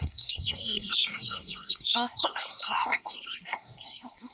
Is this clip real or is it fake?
fake